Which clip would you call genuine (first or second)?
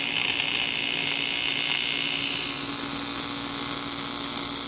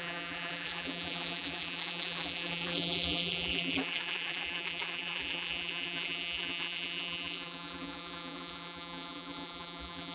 first